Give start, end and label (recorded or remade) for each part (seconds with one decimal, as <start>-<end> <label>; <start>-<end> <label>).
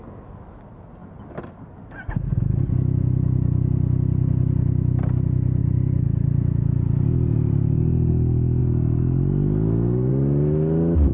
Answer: 0.0-11.1 recorded